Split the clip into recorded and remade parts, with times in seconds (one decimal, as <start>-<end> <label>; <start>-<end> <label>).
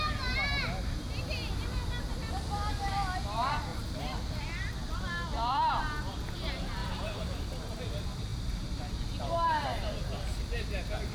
0.0-3.7 recorded; 3.7-4.6 remade; 4.6-5.3 recorded; 5.3-5.8 remade; 5.8-6.8 recorded; 6.8-7.4 remade; 7.4-11.1 recorded